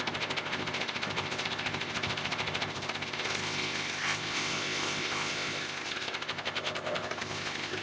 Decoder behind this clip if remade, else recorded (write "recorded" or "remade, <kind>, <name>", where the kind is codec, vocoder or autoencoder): remade, codec, ZipCodec